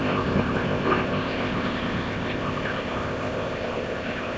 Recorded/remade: remade